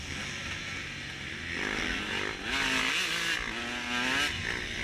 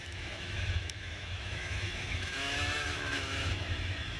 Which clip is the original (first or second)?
first